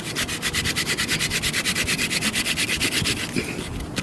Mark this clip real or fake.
real